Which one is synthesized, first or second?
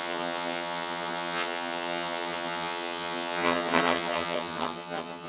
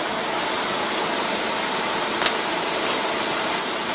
first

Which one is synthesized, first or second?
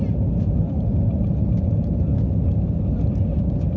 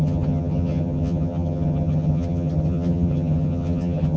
second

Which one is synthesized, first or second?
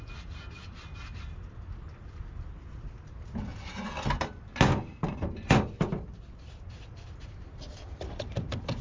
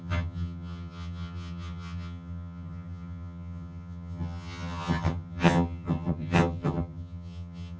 second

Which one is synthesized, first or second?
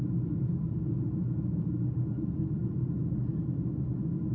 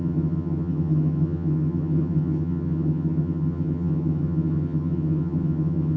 second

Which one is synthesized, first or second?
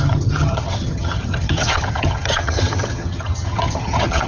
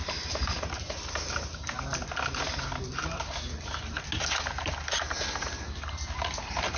first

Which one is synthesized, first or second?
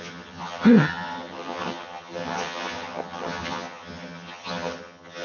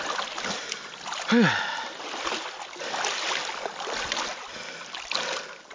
first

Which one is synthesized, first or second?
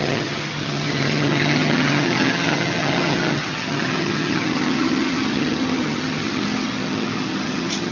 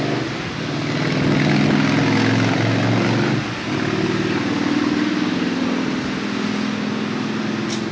first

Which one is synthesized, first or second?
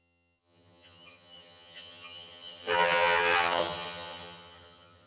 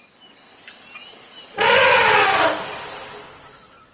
first